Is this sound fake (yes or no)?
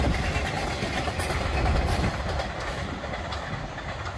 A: no